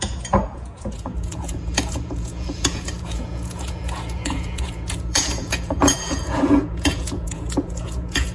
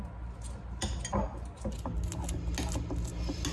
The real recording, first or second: second